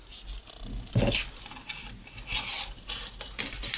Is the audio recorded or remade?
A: recorded